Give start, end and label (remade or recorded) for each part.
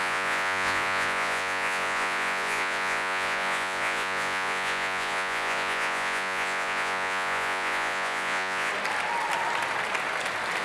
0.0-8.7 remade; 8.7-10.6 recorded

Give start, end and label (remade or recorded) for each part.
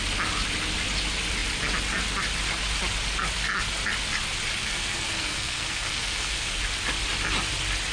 0.0-4.6 recorded; 4.6-6.6 remade; 6.6-7.9 recorded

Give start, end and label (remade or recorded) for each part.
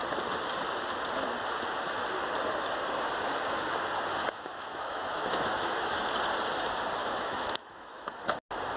0.0-4.1 recorded; 4.1-6.1 remade; 6.1-7.0 recorded; 7.0-8.2 remade; 8.2-8.8 recorded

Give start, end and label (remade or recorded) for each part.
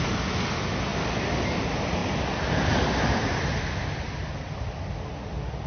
0.0-5.7 recorded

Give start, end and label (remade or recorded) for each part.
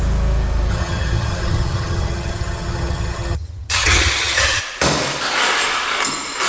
0.0-0.7 recorded; 0.7-4.6 remade; 4.6-6.5 recorded